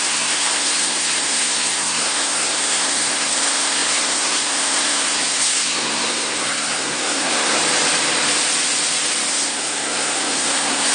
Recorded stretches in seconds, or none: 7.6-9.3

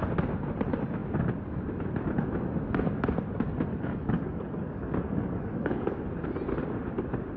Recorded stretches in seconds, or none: 0.0-3.7; 6.0-7.4

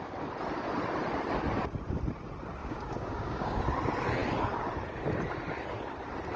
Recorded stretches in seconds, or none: 0.0-2.6; 3.6-6.4

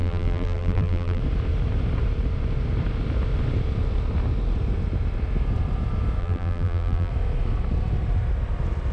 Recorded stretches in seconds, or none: 1.2-6.2; 7.1-8.9

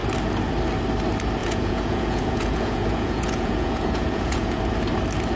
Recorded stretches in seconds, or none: 0.0-1.4; 4.6-5.4

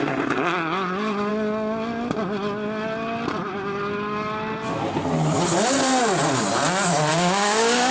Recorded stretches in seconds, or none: 0.0-7.1